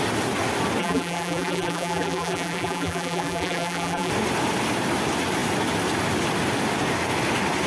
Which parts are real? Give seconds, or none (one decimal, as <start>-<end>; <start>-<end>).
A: 0.0-0.8; 4.1-7.7